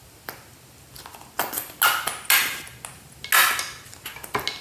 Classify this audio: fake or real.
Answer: real